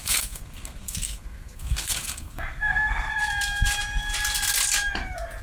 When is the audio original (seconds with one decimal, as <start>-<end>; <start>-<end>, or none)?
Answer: 3.2-5.4